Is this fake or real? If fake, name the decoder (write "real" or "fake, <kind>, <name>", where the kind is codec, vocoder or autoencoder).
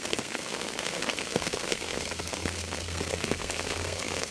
fake, codec, SNAC